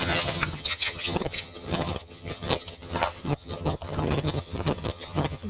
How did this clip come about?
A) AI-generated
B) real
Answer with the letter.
A